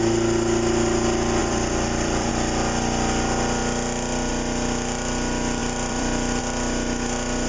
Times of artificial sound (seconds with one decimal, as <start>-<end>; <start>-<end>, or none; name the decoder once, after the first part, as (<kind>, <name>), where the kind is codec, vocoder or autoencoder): 1.4-2.3 (vocoder, BigVGAN v2); 5.6-6.4